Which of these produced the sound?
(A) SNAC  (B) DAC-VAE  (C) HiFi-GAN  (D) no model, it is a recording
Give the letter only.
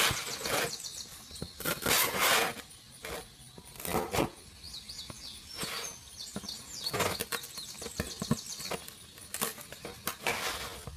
D